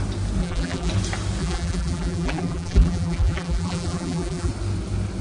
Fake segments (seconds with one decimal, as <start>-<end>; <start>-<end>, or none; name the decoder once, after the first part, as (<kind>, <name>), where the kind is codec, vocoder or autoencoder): 0.4-0.9 (vocoder, BigVGAN v2); 1.4-4.5